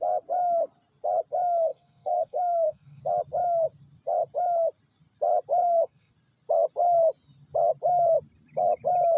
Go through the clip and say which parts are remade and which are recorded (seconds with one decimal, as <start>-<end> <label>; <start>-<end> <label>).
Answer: 0.0-1.7 recorded; 1.7-3.0 remade; 3.0-5.6 recorded; 5.6-6.1 remade; 6.1-9.2 recorded